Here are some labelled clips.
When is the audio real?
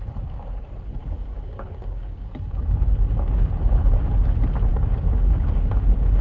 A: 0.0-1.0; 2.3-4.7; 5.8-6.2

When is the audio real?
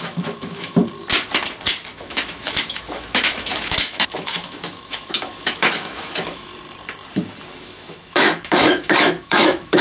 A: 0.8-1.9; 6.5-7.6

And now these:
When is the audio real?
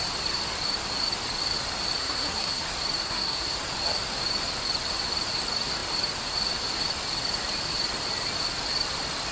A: 0.0-2.0; 2.6-3.0; 3.5-9.3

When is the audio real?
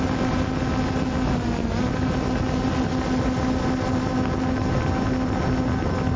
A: 0.0-6.2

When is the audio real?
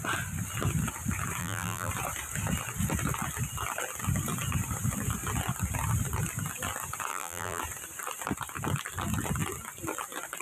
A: 0.0-1.4; 1.9-7.1; 7.6-10.4